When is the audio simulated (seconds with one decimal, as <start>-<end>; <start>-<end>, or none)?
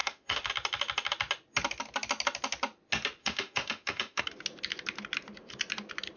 0.0-0.5; 3.2-4.2